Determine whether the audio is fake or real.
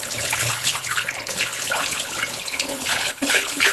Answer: fake